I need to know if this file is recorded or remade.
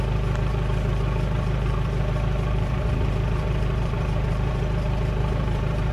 remade